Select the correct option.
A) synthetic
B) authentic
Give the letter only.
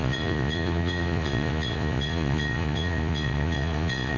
A